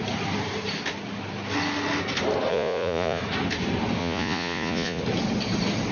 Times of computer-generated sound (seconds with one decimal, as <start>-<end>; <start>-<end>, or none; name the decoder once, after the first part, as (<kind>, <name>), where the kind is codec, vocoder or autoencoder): 2.5-3.2 (vocoder, Vocos); 4.0-5.0